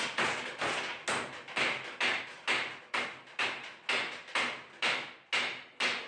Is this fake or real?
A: real